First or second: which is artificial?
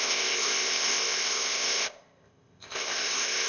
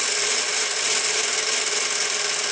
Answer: first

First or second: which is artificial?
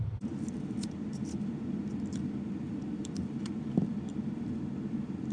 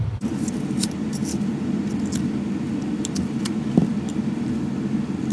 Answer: first